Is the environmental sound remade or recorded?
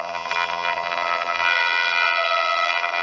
remade